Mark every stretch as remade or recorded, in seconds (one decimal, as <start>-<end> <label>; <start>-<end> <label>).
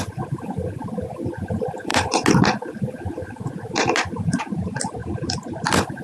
0.0-6.0 recorded